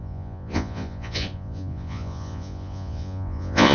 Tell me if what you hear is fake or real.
fake